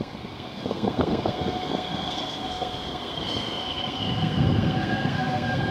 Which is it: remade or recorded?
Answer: remade